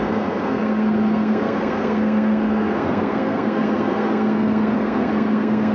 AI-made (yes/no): yes